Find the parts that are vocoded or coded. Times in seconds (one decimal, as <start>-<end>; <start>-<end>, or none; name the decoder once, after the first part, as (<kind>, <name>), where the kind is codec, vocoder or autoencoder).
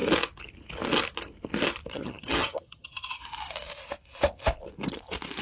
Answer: 1.9-3.2 (vocoder, HiFi-GAN)